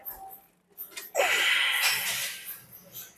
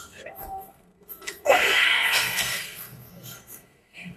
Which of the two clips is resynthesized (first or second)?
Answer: second